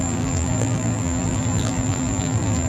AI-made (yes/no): yes